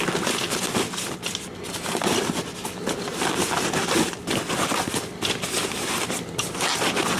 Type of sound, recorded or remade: recorded